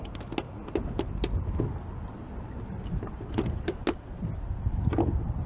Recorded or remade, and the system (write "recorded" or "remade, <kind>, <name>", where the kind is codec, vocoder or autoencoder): recorded